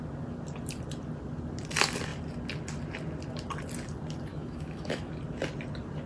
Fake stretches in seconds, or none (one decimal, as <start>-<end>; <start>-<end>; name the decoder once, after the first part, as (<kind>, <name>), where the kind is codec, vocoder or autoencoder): 4.3-5.1 (autoencoder, DAC-VAE)